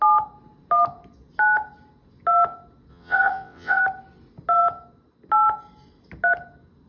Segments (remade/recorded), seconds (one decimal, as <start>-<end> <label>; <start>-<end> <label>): 0.0-2.9 recorded; 2.9-3.8 remade; 3.8-6.9 recorded

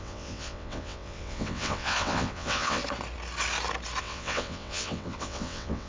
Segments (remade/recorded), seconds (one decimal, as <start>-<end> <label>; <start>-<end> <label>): 0.0-2.8 remade; 2.8-4.0 recorded; 4.0-5.9 remade

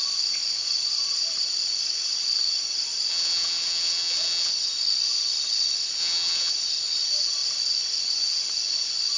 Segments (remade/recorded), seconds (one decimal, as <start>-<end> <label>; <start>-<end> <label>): 0.0-3.1 recorded; 3.1-4.5 remade; 4.5-6.0 recorded; 6.0-6.5 remade; 6.5-9.2 recorded

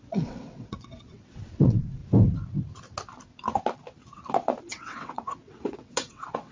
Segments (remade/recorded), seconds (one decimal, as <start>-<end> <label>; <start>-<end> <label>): 0.0-2.0 remade; 2.0-4.6 recorded; 4.6-6.5 remade

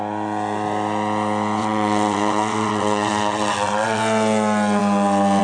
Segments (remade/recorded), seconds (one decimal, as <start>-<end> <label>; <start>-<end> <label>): 0.0-1.6 recorded; 1.6-4.0 remade; 4.0-5.4 recorded

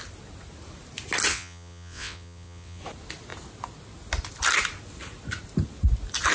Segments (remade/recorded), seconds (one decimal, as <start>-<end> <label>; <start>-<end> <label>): 0.0-1.3 recorded; 1.3-2.8 remade; 2.8-6.3 recorded

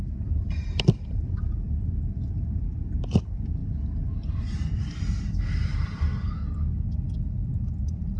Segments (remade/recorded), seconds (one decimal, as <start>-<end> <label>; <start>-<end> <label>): 0.0-8.2 recorded